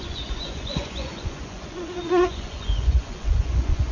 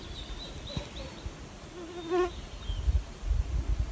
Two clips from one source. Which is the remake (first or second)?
first